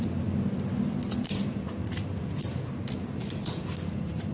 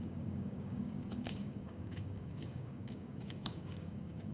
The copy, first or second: second